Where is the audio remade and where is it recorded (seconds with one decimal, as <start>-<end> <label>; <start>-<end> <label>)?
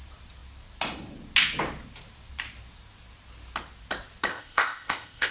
0.0-4.3 recorded; 4.3-5.3 remade